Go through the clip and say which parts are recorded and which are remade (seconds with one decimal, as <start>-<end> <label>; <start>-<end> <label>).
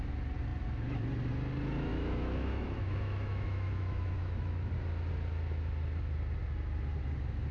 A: 0.0-1.9 recorded; 1.9-4.7 remade; 4.7-7.5 recorded